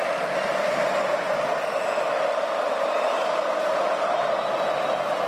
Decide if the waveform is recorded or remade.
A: recorded